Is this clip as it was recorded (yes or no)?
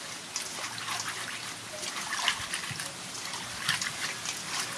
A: yes